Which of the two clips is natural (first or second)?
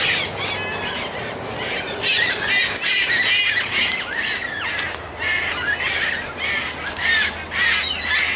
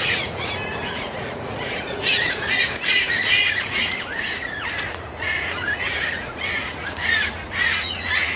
first